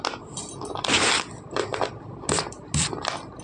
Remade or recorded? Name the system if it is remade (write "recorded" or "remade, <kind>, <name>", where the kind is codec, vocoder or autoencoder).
recorded